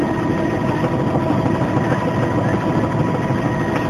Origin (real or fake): real